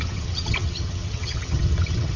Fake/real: fake